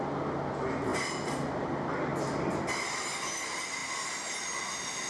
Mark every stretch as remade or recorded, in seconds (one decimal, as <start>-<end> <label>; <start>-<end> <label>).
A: 0.0-5.1 recorded